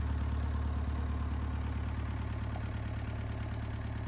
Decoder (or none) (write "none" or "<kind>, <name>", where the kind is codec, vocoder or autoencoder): none